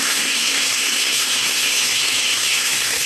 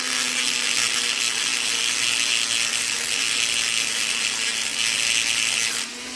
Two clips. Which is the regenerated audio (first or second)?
first